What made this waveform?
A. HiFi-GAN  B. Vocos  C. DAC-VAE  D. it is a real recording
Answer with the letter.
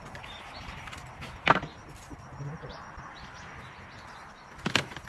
D